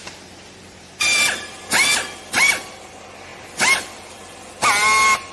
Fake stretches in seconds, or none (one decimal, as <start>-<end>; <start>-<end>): 0.6-1.9; 2.4-3.3; 3.9-5.3